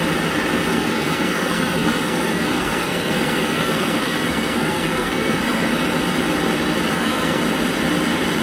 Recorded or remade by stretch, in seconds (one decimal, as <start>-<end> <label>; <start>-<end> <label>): 0.0-0.7 recorded; 0.7-5.7 remade; 5.7-6.9 recorded; 6.9-7.4 remade; 7.4-8.4 recorded